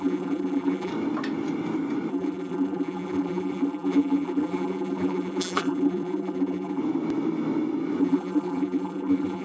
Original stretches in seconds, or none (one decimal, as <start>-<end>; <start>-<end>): 0.9-2.1; 6.8-8.0